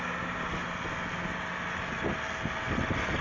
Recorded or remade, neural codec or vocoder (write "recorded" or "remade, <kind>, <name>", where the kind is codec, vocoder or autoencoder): recorded